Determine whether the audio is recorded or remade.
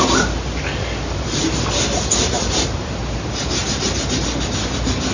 recorded